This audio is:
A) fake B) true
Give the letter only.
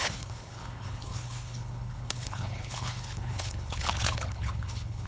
A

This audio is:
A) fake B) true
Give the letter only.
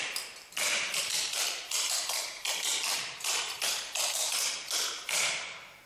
A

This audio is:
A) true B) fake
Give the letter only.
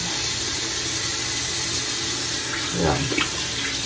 A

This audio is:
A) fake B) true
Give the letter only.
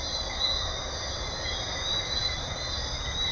B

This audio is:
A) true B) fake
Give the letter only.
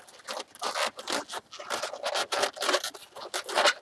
A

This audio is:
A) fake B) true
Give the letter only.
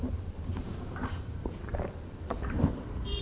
A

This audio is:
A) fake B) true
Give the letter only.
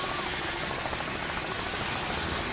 B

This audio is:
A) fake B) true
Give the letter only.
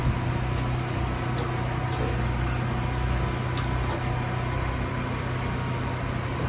B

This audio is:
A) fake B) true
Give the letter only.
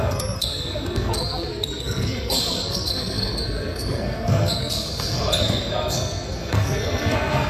A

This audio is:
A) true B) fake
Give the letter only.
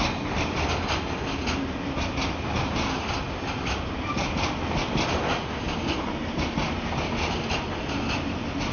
A